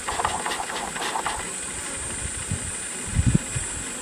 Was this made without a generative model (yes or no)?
yes